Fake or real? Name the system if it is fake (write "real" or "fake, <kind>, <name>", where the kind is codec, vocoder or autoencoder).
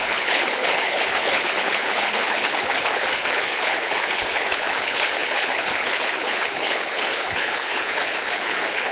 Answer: fake, codec, HILCodec